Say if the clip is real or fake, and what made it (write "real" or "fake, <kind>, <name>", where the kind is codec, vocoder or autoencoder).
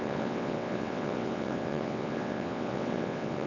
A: fake, vocoder, WaveNeXt